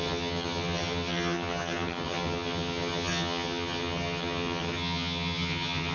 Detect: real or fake fake